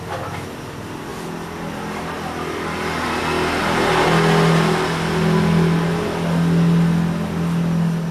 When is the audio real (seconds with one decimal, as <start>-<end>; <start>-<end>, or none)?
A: 0.0-8.1